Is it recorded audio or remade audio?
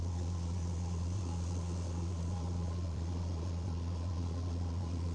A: remade